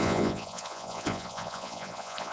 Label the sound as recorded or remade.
remade